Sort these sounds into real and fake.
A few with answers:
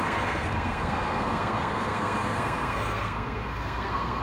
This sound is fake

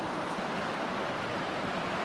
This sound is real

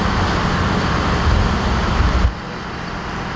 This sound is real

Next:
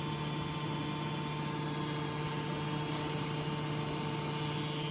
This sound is real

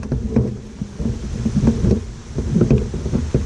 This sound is real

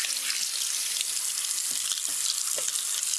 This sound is real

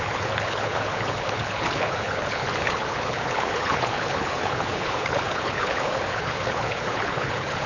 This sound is fake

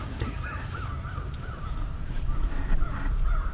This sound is fake